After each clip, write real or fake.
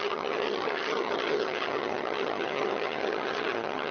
fake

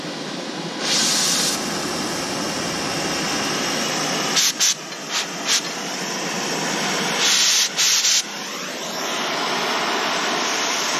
real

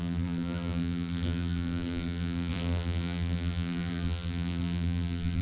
fake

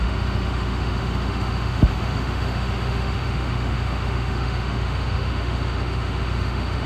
fake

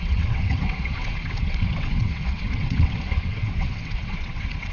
fake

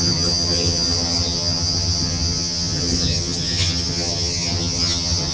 fake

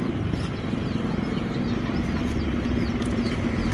real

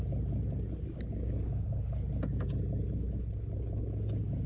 real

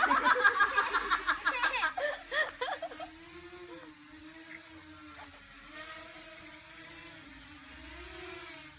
real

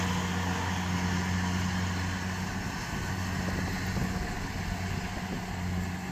real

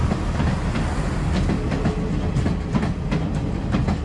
real